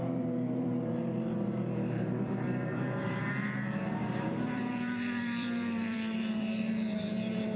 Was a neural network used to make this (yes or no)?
yes